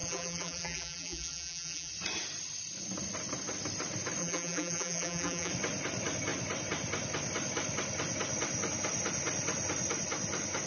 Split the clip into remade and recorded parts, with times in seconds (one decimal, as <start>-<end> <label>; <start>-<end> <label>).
0.0-1.9 remade; 1.9-4.2 recorded; 4.2-5.5 remade; 5.5-10.7 recorded